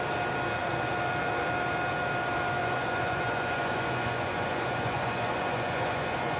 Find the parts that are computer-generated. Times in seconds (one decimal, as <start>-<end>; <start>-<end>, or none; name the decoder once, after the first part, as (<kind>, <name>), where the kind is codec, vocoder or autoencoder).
2.6-6.4 (vocoder, Vocos)